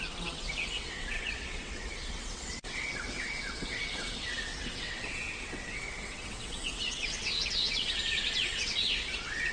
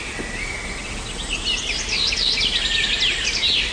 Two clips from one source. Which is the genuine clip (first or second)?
second